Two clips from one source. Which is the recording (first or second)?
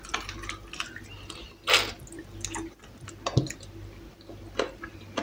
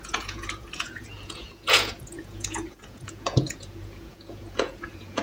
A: first